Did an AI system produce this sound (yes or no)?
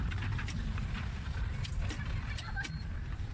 no